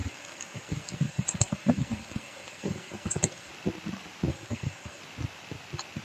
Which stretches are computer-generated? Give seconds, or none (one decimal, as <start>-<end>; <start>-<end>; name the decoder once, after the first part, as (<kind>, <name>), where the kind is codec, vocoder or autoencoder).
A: 0.0-3.5 (codec, SNAC); 4.3-5.0